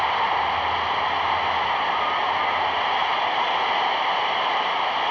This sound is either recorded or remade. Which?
recorded